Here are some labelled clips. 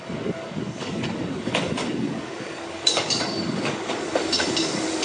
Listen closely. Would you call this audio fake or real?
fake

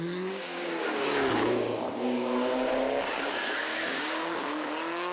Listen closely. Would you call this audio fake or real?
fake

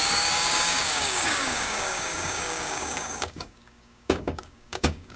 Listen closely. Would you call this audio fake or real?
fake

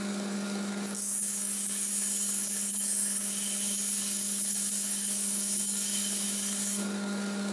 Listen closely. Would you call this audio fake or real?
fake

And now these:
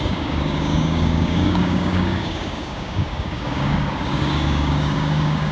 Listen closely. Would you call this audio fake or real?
fake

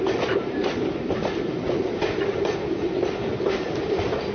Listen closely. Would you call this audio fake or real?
real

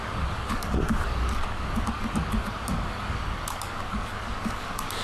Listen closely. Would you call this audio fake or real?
fake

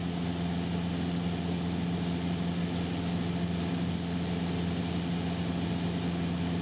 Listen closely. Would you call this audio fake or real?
real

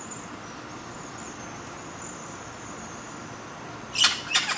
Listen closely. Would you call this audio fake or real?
real